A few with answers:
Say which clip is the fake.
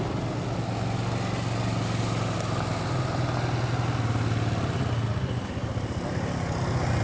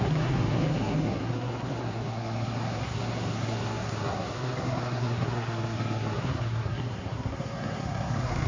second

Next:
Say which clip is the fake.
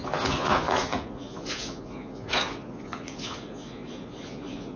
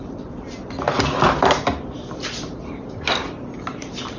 first